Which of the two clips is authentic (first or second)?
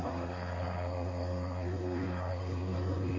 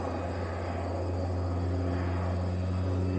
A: second